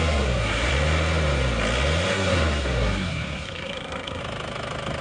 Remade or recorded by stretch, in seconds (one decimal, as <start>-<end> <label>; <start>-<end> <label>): 0.0-0.7 remade; 0.7-2.1 recorded; 2.1-4.2 remade; 4.2-5.0 recorded